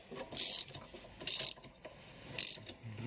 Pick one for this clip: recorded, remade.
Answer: recorded